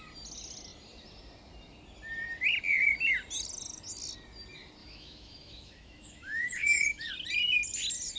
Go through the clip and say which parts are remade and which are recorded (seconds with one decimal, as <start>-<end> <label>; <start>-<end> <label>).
0.0-4.8 recorded; 4.8-7.1 remade; 7.1-8.2 recorded